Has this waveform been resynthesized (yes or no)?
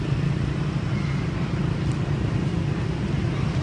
no